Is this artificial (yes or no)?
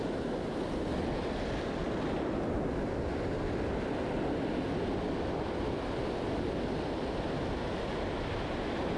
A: no